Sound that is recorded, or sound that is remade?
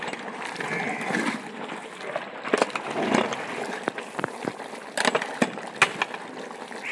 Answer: recorded